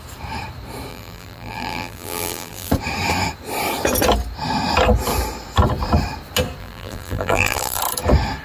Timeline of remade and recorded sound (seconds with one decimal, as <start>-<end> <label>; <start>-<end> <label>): 0.0-0.9 recorded; 0.9-2.7 remade; 2.7-6.6 recorded; 6.6-7.8 remade; 7.8-8.4 recorded